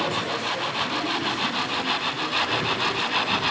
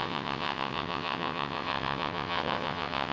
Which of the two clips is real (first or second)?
first